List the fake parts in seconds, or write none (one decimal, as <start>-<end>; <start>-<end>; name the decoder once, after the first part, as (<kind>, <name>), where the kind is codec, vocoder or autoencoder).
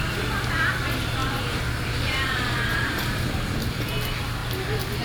1.2-3.9 (vocoder, BigVGAN v2); 4.4-5.0